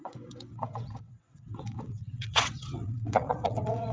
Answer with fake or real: fake